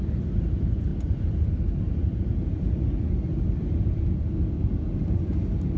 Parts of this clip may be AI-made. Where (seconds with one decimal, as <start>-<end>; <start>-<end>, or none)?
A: none